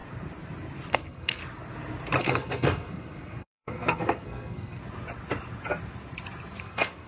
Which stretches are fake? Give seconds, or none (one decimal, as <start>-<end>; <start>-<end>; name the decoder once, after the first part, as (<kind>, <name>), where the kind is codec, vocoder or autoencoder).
0.9-1.4 (codec, SNAC); 2.2-4.8; 6.6-7.1